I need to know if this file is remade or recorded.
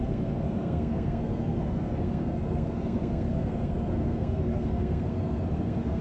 remade